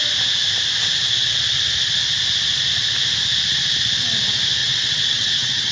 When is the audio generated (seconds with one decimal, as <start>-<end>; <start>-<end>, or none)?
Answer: 4.6-5.7